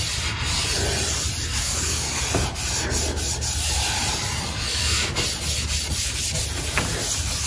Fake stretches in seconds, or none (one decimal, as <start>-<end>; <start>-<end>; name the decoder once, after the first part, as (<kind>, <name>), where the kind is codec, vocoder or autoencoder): 1.5-2.2 (codec, DAC); 4.7-5.2